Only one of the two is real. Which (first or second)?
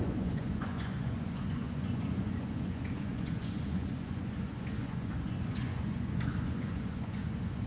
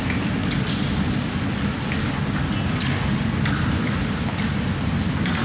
second